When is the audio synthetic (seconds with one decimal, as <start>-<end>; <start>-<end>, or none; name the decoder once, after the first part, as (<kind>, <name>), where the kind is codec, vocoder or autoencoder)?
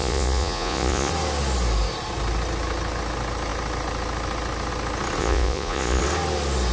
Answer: 0.0-1.1 (vocoder, Vocos); 5.2-6.0